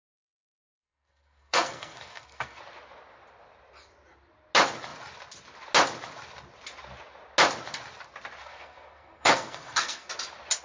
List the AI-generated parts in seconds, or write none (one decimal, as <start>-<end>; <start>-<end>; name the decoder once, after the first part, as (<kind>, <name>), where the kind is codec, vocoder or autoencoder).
0.6-2.6 (codec, SNAC); 8.4-10.1